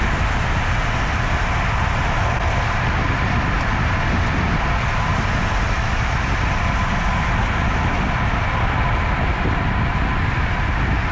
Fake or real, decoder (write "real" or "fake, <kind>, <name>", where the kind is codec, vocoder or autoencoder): real